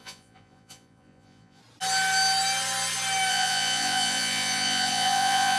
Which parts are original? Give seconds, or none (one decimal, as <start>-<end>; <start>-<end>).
1.6-3.3